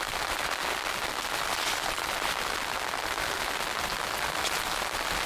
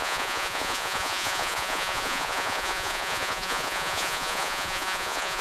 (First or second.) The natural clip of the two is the first